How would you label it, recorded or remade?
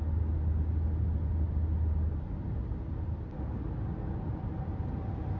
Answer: recorded